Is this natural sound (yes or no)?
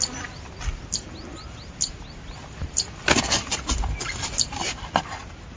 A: yes